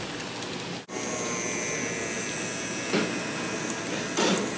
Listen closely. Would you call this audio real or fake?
real